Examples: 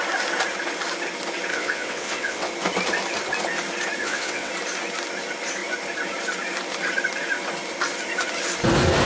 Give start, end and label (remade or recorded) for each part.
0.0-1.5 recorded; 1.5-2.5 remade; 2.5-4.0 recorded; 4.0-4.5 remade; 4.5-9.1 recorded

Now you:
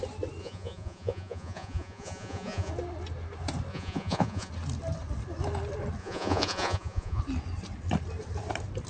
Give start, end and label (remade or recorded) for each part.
0.0-0.4 recorded; 0.4-2.7 remade; 2.7-3.7 recorded; 3.7-4.5 remade; 4.5-6.0 recorded; 6.0-7.2 remade; 7.2-8.9 recorded

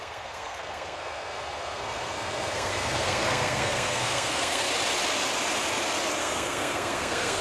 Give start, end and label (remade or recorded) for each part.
0.0-4.7 remade; 4.7-6.2 recorded; 6.2-7.4 remade